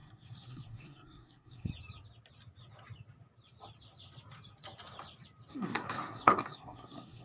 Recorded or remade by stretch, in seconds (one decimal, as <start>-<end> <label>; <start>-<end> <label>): 0.0-1.7 remade; 1.7-5.5 recorded; 5.5-7.2 remade